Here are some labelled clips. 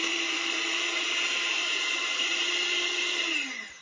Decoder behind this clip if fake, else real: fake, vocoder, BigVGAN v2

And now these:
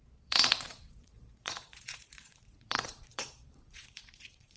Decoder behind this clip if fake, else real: fake, vocoder, Vocos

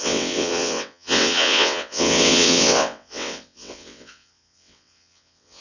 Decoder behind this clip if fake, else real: fake, vocoder, WaveNeXt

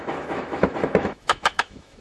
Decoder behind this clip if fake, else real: fake, autoencoder, DAC-VAE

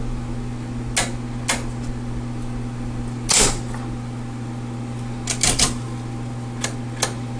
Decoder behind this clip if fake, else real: real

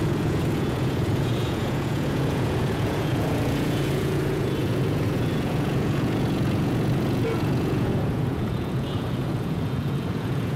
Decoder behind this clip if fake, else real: fake, vocoder, Vocos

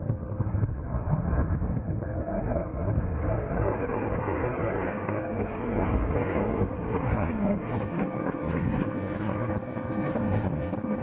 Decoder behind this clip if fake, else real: fake, codec, SNAC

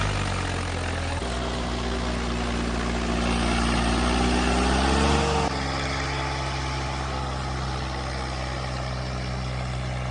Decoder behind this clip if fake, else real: real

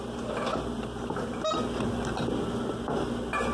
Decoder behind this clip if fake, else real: real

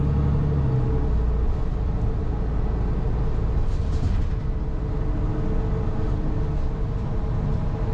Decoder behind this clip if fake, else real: real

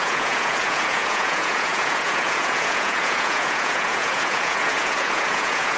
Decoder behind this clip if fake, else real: fake, vocoder, Vocos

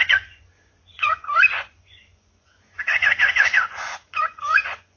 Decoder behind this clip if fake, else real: fake, vocoder, Vocos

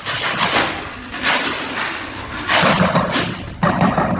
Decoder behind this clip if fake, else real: real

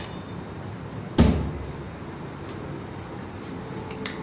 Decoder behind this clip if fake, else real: real